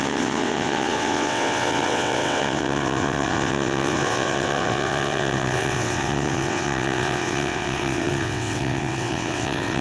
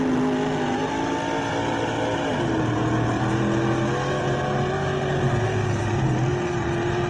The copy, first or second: first